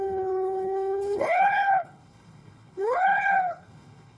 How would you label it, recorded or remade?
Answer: remade